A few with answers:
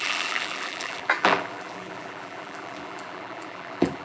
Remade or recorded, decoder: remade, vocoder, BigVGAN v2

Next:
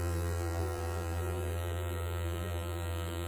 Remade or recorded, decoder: remade, vocoder, BigVGAN v2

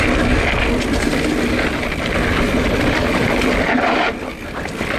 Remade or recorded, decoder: recorded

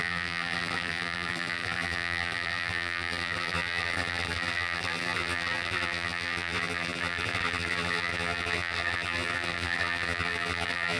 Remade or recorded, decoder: remade, vocoder, BigVGAN v2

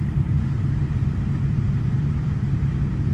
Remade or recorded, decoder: remade, vocoder, BigVGAN v2